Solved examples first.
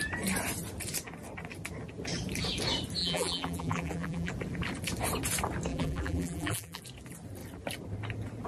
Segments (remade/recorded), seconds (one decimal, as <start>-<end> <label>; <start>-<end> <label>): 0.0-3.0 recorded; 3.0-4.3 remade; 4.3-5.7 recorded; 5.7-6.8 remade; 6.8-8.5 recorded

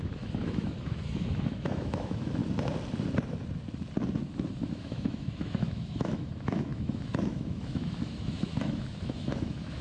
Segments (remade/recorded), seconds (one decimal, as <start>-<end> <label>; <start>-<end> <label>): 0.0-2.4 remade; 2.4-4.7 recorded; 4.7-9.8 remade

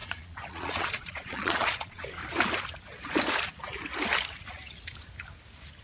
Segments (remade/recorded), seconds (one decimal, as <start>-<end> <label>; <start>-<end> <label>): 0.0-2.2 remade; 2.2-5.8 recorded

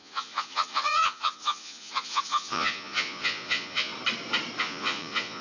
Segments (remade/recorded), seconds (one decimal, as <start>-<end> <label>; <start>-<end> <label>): 0.0-3.9 remade; 3.9-4.6 recorded; 4.6-5.4 remade